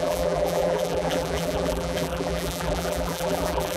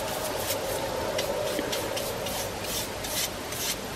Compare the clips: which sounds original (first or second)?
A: second